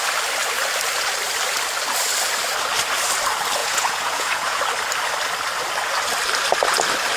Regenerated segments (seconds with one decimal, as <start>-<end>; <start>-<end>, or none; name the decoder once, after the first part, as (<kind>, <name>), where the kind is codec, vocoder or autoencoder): 3.6-4.6 (vocoder, Vocos)